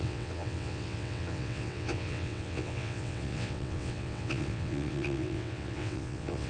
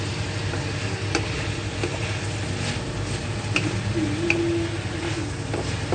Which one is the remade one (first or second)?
first